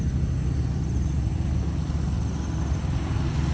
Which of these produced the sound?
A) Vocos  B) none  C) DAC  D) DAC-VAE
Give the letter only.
B